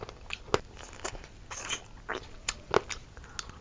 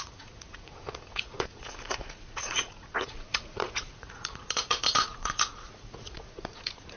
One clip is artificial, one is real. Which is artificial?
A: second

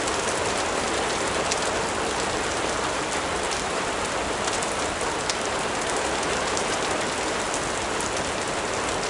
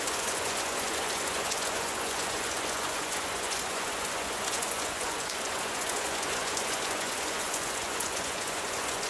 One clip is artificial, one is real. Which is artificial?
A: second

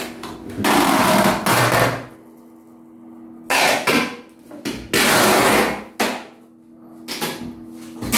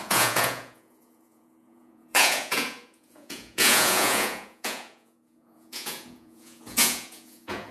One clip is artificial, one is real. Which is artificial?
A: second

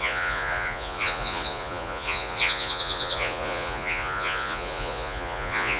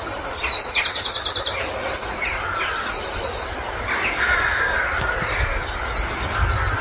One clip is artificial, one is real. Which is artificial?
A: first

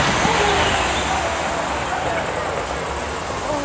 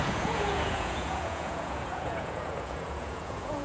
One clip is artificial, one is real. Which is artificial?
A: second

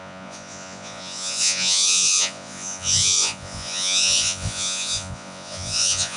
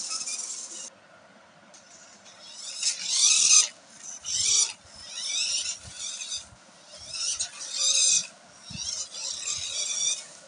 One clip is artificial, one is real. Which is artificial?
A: first